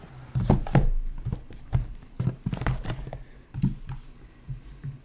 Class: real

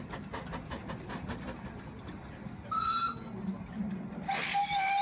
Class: real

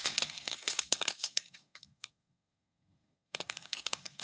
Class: fake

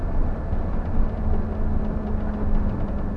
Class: real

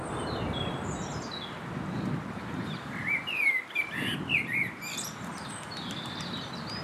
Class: real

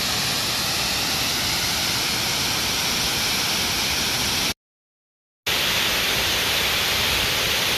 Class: real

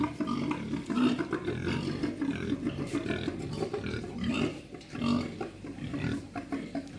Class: real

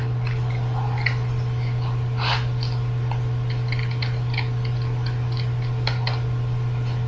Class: real